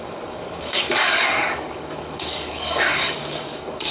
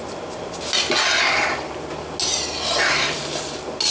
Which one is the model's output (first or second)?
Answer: first